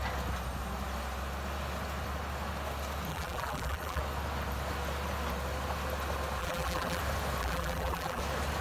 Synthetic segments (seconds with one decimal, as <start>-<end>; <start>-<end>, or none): 3.1-4.0; 6.4-7.0; 7.4-8.2